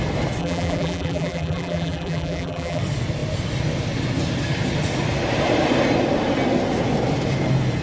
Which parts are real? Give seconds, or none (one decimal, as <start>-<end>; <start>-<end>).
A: 0.0-0.4; 2.8-7.8